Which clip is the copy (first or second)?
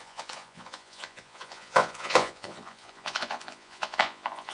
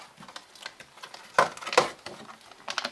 first